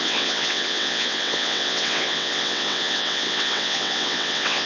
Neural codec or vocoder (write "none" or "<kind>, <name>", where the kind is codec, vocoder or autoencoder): vocoder, WaveNeXt